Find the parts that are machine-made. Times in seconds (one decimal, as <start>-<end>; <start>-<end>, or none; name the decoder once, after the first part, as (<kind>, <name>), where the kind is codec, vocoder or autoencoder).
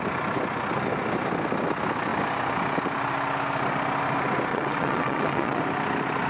4.5-5.6 (vocoder, WaveNeXt)